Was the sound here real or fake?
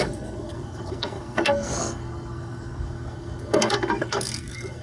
fake